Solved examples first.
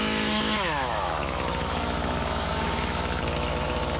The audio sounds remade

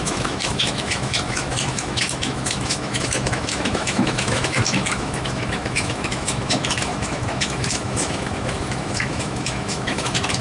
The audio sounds remade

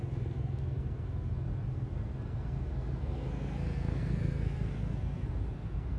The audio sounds remade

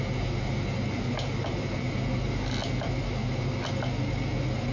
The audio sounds recorded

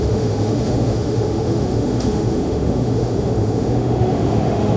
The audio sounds remade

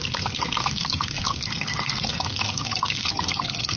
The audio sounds remade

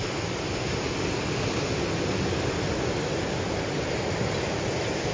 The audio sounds recorded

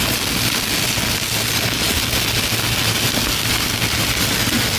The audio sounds recorded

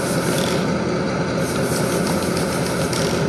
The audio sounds recorded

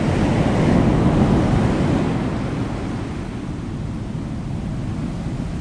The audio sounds recorded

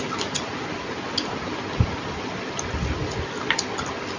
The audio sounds recorded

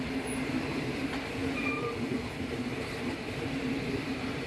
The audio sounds recorded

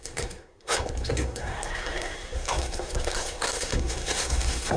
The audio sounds remade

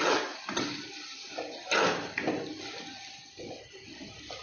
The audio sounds recorded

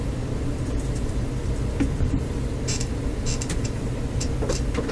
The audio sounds remade